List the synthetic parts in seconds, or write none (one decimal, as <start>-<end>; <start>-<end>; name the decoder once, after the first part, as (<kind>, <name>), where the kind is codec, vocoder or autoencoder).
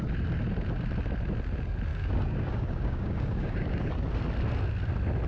1.9-3.9 (codec, DAC)